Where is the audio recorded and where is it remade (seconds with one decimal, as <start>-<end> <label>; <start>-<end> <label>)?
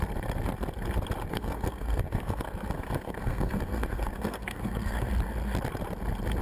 0.0-1.3 recorded; 1.3-5.1 remade; 5.1-6.4 recorded